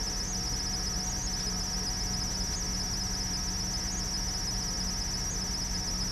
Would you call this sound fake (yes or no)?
no